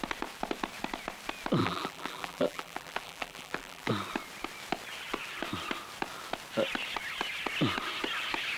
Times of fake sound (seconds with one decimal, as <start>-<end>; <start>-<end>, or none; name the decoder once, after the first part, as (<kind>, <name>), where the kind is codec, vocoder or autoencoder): 1.6-3.9 (vocoder, BigVGAN v2)